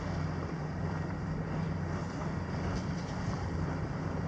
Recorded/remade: remade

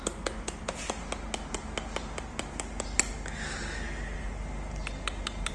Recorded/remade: recorded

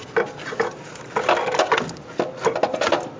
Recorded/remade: recorded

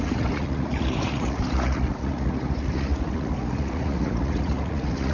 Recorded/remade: remade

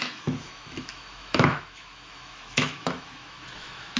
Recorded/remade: remade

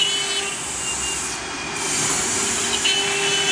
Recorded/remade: recorded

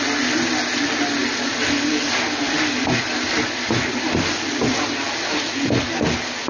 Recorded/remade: recorded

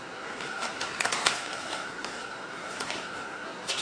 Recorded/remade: remade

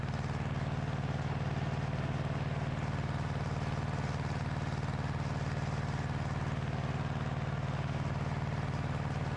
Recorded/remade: recorded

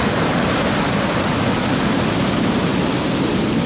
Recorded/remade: recorded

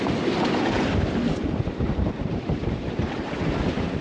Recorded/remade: remade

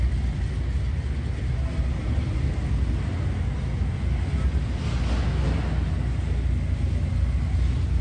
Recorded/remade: recorded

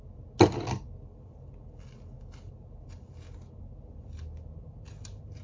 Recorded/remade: recorded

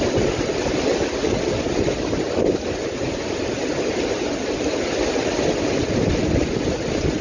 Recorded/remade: recorded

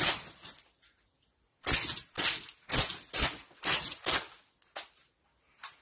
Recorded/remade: recorded